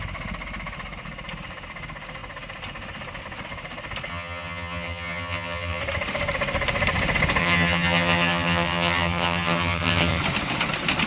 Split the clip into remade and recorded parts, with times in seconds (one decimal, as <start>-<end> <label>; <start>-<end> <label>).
0.0-4.1 recorded; 4.1-5.8 remade; 5.8-7.4 recorded; 7.4-10.2 remade; 10.2-11.1 recorded